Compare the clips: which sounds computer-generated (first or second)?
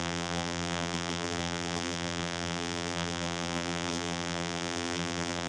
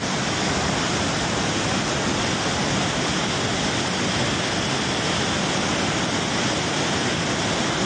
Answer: first